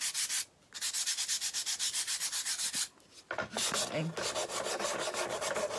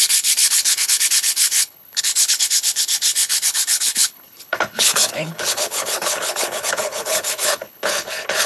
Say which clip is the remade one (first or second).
second